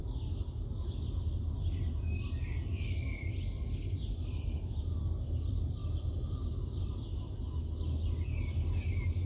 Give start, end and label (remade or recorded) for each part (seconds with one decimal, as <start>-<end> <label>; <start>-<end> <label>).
0.0-9.3 recorded